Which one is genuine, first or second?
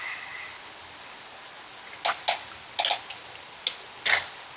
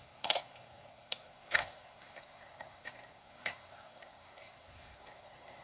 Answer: first